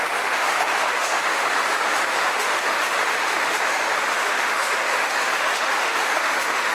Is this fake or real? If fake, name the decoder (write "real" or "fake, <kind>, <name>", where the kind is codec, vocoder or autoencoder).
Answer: fake, autoencoder, DAC-VAE